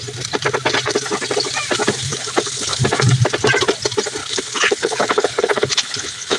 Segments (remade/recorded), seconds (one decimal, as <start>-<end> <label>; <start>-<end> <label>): 0.0-2.1 recorded; 2.1-2.8 remade; 2.8-4.2 recorded; 4.2-6.4 remade